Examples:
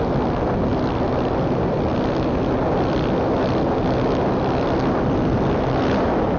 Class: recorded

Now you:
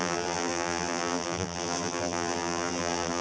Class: remade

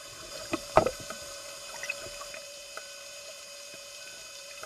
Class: remade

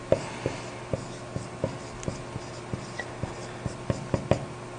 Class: recorded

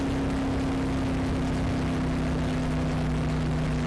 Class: recorded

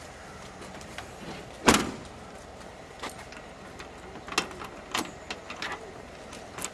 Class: recorded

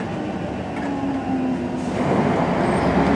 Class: recorded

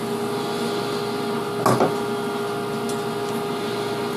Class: recorded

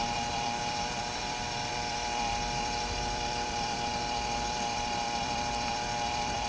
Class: remade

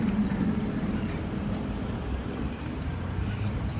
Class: remade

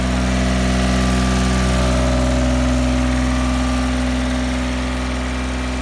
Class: recorded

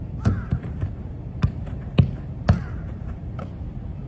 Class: remade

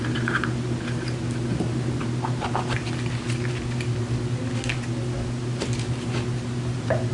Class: recorded